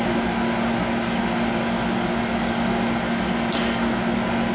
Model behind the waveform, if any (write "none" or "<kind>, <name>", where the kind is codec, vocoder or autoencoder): none